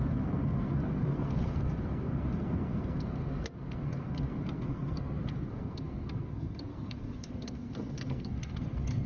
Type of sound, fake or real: fake